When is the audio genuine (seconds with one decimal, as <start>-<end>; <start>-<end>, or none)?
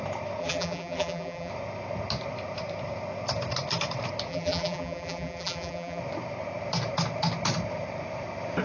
0.0-0.4; 1.5-4.3; 6.0-8.6